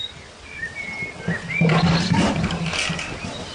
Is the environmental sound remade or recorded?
recorded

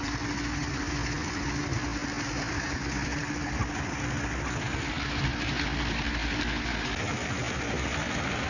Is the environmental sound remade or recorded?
recorded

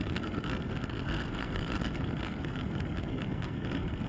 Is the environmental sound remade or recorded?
remade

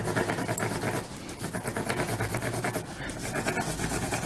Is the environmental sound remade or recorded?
recorded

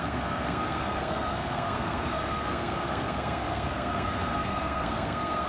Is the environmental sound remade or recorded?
remade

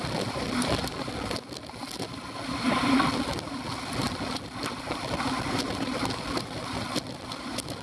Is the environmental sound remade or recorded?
recorded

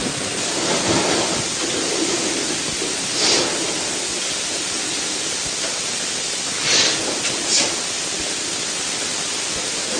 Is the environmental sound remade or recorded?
recorded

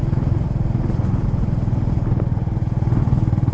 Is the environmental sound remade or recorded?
recorded